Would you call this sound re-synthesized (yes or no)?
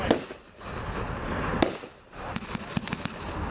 no